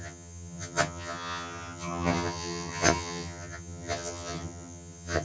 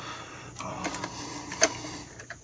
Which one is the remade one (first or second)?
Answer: first